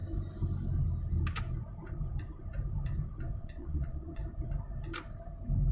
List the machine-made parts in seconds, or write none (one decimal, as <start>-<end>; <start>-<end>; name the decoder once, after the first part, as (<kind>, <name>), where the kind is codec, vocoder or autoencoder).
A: 3.4-4.2 (vocoder, Vocos)